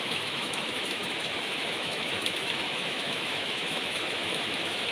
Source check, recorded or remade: remade